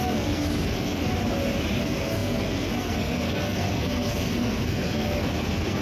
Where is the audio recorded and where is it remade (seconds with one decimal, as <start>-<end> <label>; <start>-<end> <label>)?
0.0-1.1 remade; 1.1-1.8 recorded; 1.8-5.8 remade